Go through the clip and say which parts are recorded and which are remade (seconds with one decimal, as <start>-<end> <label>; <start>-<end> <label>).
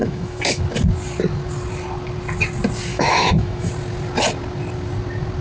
0.0-0.6 remade; 0.6-2.9 recorded; 2.9-3.7 remade; 3.7-5.4 recorded